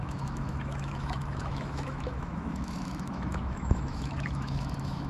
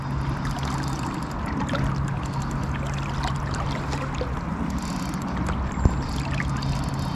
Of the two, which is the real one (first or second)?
second